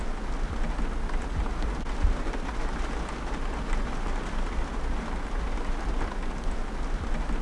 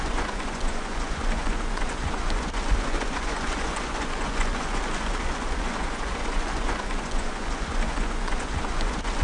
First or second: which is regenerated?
second